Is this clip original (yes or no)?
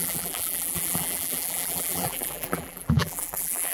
no